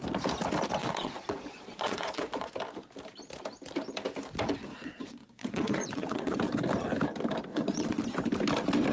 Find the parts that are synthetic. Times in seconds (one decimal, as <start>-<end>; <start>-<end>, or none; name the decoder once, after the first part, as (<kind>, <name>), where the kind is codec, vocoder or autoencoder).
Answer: 0.8-2.5 (vocoder, Vocos); 4.7-6.4; 7.5-8.0